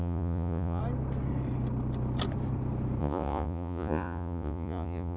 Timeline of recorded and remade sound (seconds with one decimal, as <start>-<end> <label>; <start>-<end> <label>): 0.0-0.8 remade; 0.8-3.0 recorded; 3.0-5.2 remade